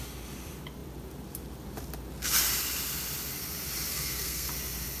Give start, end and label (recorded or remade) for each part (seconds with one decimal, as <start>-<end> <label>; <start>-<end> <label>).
0.0-3.9 recorded; 3.9-4.5 remade; 4.5-5.0 recorded